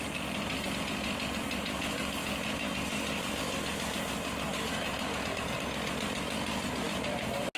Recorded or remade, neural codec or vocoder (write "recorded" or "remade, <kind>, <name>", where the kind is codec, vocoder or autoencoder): recorded